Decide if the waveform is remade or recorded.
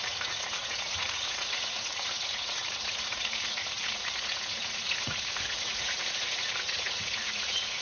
remade